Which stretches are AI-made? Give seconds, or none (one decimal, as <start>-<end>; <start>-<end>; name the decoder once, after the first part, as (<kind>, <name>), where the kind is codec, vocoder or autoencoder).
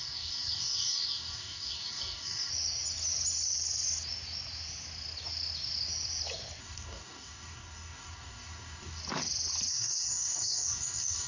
0.0-2.5 (codec, DAC); 6.6-9.0; 9.7-11.3